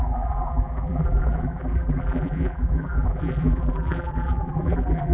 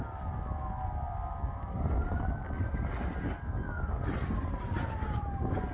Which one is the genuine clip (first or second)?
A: second